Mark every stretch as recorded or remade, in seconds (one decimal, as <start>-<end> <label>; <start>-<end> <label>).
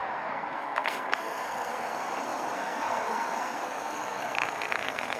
0.0-5.2 remade